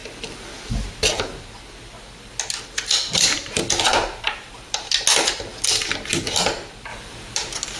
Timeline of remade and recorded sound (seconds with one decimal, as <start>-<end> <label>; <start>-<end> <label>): 0.0-3.9 recorded; 3.9-4.9 remade; 4.9-6.9 recorded; 6.9-7.8 remade